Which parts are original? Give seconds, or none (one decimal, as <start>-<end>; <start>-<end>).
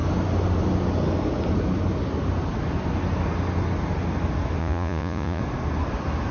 0.0-4.6; 5.4-6.3